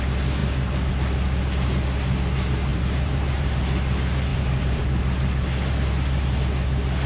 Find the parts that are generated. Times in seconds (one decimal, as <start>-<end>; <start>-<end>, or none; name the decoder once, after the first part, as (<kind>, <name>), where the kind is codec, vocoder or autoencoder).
2.7-3.6 (vocoder, BigVGAN v2); 4.3-4.8